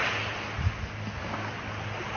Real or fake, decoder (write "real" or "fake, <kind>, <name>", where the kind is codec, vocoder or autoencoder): real